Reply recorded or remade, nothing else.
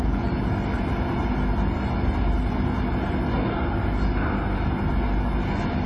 recorded